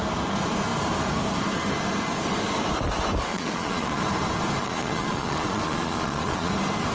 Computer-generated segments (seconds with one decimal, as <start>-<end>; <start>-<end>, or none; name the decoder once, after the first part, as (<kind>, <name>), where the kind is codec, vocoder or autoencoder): 3.3-4.0 (vocoder, Vocos); 4.6-6.5